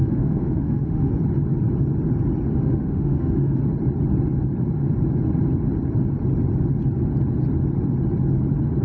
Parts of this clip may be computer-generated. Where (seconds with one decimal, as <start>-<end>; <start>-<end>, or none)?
0.0-1.1; 2.5-3.6

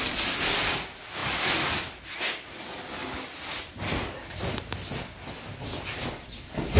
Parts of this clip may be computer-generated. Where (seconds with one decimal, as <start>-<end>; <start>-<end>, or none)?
none